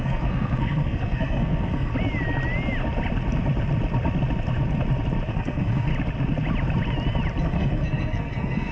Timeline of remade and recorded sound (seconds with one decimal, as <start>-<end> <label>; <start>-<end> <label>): 0.0-1.9 remade; 1.9-5.3 recorded; 5.3-5.9 remade; 5.9-7.4 recorded; 7.4-8.7 remade